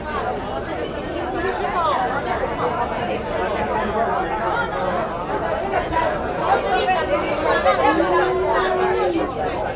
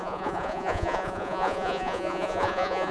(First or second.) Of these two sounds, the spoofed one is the second